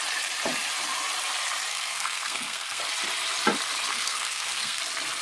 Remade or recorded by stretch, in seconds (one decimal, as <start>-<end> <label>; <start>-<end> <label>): 0.0-1.7 recorded; 1.7-2.8 remade; 2.8-3.9 recorded; 3.9-4.8 remade; 4.8-5.2 recorded